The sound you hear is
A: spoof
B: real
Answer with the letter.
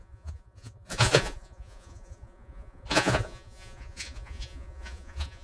A